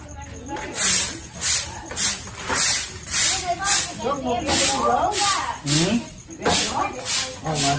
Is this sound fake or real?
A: real